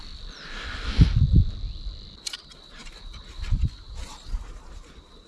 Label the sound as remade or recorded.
recorded